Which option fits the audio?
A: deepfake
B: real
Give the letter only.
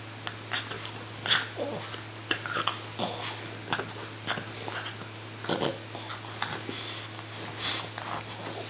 B